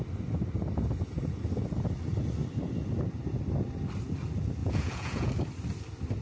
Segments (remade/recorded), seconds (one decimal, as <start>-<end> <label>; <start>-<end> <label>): 0.0-4.6 recorded; 4.6-5.3 remade; 5.3-6.2 recorded